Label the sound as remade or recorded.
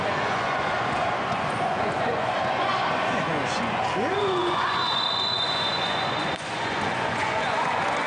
remade